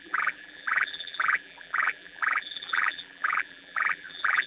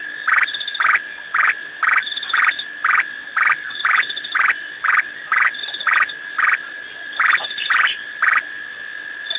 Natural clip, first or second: second